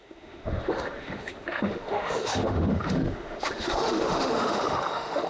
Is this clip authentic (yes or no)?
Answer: no